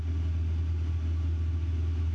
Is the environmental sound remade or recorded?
recorded